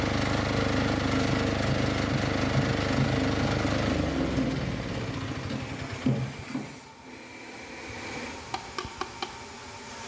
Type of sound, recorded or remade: recorded